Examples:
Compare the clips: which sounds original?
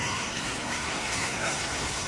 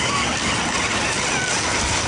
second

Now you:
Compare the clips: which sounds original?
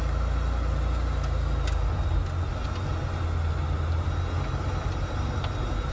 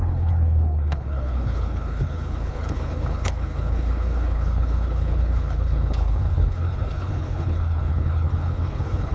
first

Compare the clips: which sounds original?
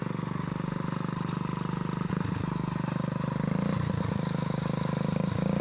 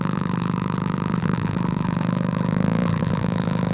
first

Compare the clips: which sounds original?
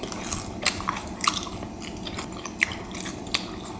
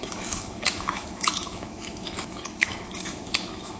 first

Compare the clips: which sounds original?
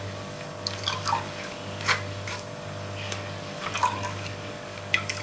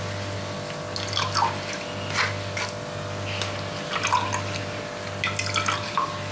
second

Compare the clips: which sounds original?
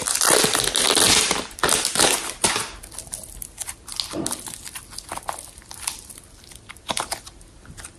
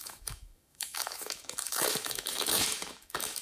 first